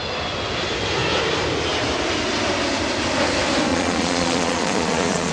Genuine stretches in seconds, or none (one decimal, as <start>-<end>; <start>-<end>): 0.0-3.7